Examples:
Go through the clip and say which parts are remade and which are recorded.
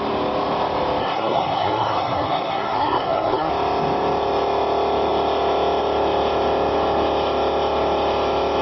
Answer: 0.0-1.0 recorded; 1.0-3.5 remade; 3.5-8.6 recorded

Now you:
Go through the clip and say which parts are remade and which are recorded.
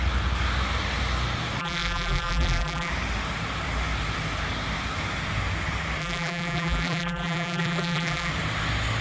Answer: 0.0-1.6 recorded; 1.6-2.9 remade; 2.9-6.0 recorded; 6.0-8.3 remade; 8.3-9.0 recorded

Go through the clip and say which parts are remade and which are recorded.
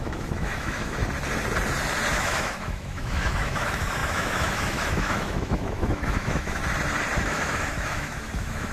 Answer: 0.0-1.0 remade; 1.0-2.1 recorded; 2.1-6.6 remade; 6.6-7.2 recorded; 7.2-8.7 remade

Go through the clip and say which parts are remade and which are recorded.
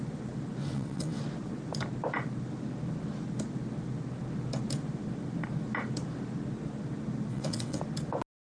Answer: 0.0-0.6 recorded; 0.6-1.2 remade; 1.2-7.3 recorded; 7.3-7.8 remade; 7.8-8.5 recorded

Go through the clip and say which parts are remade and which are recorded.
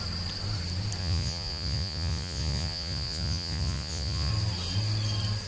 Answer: 0.0-1.0 recorded; 1.0-4.3 remade; 4.3-5.5 recorded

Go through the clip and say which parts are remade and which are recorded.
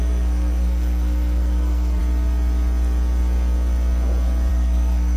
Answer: 0.0-2.0 remade; 2.0-4.5 recorded; 4.5-5.2 remade